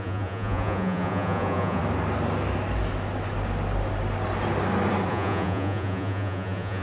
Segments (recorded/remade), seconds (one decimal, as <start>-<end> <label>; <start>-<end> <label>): 0.0-1.8 remade; 1.8-5.1 recorded; 5.1-6.8 remade

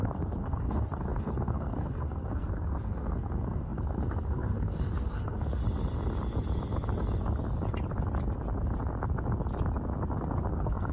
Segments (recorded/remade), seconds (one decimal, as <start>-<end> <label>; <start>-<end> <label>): 0.0-5.6 remade; 5.6-10.5 recorded; 10.5-10.9 remade

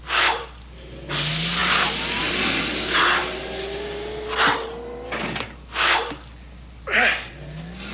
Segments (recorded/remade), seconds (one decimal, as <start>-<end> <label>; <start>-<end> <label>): 0.0-7.9 recorded